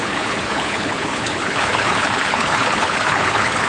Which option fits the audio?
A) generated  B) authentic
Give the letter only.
A